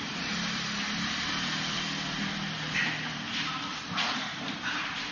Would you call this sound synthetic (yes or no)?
yes